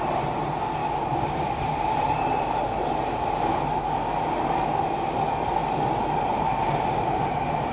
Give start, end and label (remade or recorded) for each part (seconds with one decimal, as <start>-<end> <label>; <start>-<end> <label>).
0.0-7.7 recorded